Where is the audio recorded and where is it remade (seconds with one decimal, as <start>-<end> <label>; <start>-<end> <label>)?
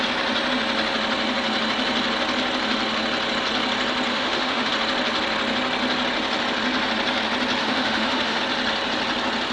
0.0-4.1 recorded; 4.1-4.7 remade; 4.7-7.6 recorded; 7.6-8.4 remade; 8.4-9.5 recorded